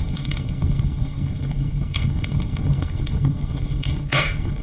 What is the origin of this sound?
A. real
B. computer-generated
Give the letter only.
B